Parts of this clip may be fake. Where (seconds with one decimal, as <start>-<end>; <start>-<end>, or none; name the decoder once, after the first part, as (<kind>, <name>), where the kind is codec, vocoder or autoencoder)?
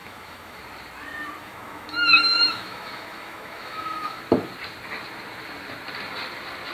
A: 0.0-0.6 (autoencoder, DAC-VAE); 1.4-4.2